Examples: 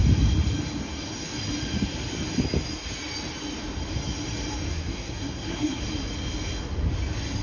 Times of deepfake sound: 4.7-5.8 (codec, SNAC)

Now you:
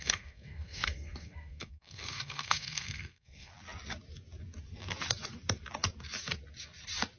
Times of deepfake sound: 0.0-3.5 (codec, SNAC)

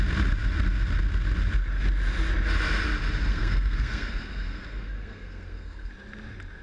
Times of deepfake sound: 3.3-5.9 (codec, SNAC)

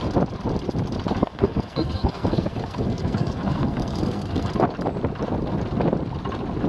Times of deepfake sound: 1.2-4.5 (codec, SNAC)

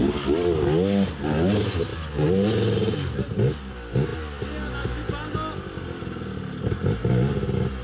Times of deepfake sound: none

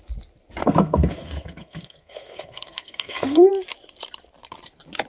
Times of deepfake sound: 0.6-3.5 (codec, SNAC)

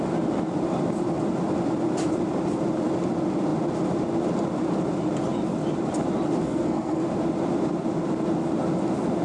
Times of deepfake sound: 6.4-7.1 (codec, SNAC)